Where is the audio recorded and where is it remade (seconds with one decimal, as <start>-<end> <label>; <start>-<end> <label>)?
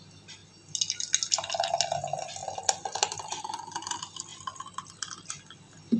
0.0-6.0 recorded